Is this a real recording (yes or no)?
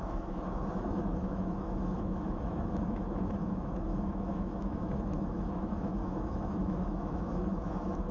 no